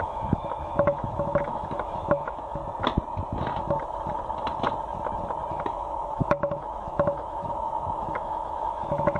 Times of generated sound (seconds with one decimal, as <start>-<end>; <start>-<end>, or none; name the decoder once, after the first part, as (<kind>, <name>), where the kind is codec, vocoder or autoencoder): 0.0-2.6 (autoencoder, DAC-VAE); 5.5-9.2